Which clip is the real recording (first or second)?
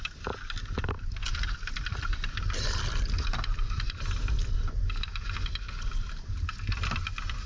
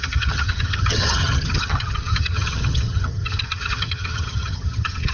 first